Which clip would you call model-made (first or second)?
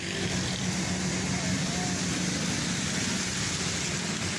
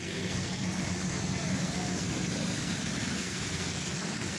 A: second